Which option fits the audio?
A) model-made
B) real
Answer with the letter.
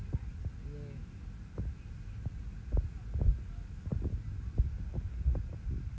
B